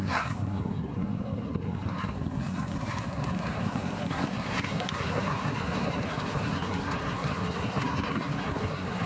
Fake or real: fake